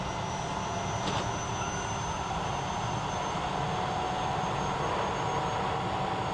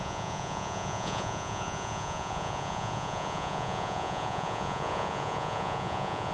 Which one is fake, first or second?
second